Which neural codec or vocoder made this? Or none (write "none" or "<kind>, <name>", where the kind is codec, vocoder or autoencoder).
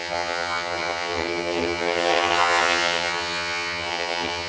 vocoder, HiFi-GAN